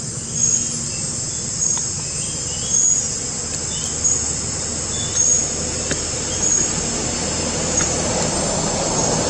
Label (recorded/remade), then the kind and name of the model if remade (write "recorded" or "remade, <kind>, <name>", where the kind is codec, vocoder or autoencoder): recorded